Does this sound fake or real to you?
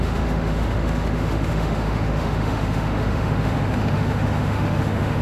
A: fake